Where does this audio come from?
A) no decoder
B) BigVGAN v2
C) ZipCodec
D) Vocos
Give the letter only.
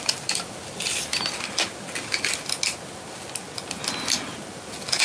A